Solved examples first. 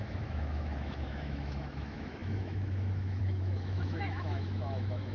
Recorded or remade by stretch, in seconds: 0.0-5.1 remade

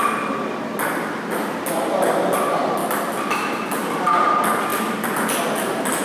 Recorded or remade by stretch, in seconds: 0.0-6.0 recorded